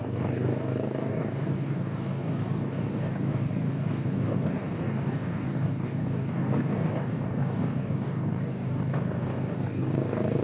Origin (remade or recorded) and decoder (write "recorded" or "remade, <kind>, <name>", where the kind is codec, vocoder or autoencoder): remade, codec, DAC